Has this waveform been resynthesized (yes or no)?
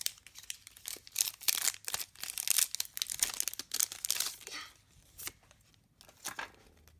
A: no